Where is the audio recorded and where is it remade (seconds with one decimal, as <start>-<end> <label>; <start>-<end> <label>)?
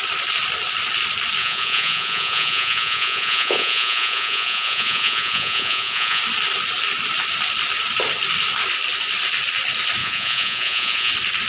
0.0-1.4 recorded; 1.4-6.2 remade; 6.2-10.0 recorded; 10.0-11.1 remade; 11.1-11.5 recorded